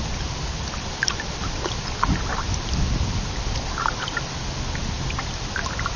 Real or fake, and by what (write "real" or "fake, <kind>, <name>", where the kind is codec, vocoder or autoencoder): real